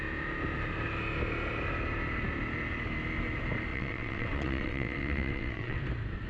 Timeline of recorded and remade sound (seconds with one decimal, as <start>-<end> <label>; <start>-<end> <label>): 0.0-3.7 recorded; 3.7-5.8 remade; 5.8-6.3 recorded